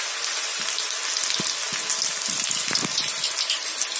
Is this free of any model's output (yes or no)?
yes